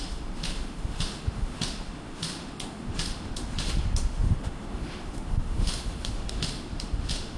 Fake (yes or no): yes